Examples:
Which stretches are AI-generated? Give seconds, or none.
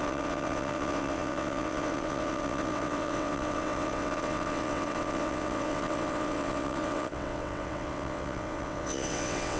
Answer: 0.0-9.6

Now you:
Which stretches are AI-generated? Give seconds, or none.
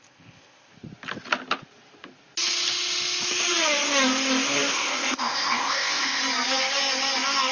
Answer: 0.0-0.7; 4.7-6.2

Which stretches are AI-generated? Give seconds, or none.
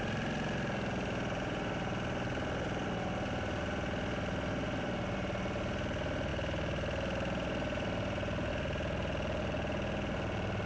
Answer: none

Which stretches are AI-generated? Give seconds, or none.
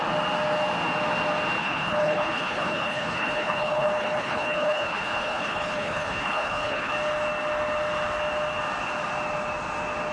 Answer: 1.6-6.9